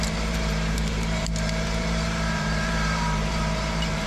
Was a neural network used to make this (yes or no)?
yes